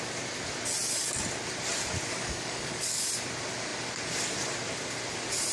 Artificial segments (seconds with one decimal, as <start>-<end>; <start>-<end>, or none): 2.1-3.1